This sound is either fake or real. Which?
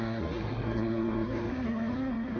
fake